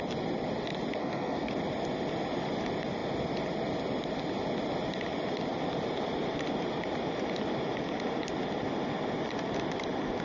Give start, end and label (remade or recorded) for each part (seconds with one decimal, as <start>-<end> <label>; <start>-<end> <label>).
0.0-1.0 recorded; 1.0-1.5 remade; 1.5-10.2 recorded